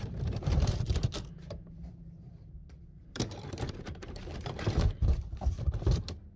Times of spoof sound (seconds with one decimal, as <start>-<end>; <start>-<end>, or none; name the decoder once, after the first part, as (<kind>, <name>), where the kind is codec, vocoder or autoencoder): 0.0-6.4 (vocoder, BigVGAN v2)